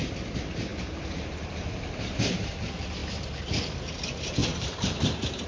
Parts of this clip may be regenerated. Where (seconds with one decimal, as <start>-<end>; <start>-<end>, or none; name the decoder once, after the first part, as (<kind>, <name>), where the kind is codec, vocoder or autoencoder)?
0.7-2.6 (vocoder, BigVGAN v2); 3.0-3.6; 4.4-5.0